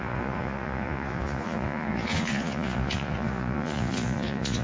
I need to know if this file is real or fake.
fake